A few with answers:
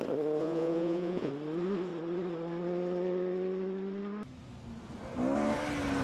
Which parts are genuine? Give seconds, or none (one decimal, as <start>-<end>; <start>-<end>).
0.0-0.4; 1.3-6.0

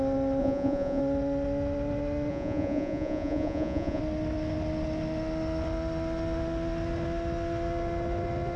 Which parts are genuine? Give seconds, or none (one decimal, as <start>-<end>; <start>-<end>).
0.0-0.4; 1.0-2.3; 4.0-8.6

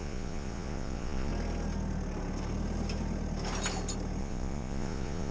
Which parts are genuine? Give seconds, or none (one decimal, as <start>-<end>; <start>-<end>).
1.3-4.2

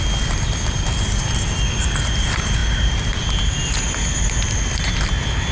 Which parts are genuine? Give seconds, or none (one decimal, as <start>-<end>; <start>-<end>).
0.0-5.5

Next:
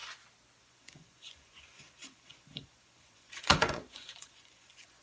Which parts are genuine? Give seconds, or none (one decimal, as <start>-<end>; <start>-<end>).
0.0-0.6

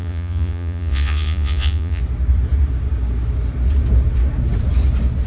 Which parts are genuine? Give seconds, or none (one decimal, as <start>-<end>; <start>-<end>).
2.0-5.3